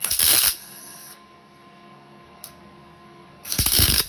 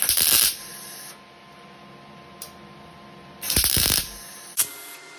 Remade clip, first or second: first